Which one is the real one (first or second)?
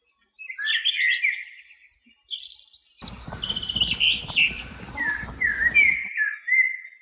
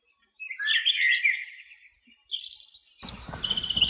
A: first